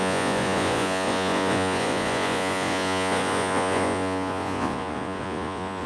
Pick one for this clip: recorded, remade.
remade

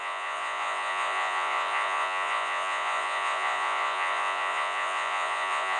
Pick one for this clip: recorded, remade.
remade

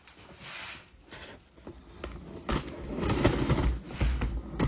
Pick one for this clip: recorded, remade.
recorded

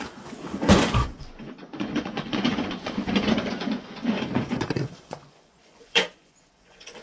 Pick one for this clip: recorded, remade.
remade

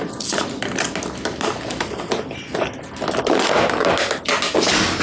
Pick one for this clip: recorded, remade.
recorded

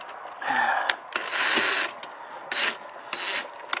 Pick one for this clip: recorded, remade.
recorded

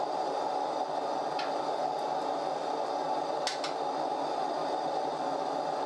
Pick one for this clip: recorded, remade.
recorded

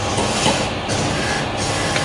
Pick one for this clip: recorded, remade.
recorded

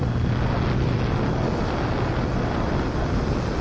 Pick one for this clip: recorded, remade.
recorded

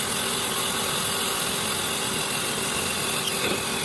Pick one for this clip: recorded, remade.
recorded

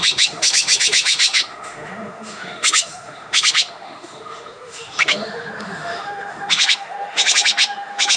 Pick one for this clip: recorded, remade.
remade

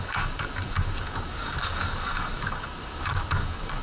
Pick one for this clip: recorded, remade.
remade